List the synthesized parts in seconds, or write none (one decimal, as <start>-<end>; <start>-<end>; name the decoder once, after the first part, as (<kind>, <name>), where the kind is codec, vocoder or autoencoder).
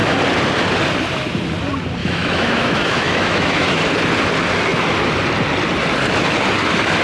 2.0-3.8 (autoencoder, DAC-VAE)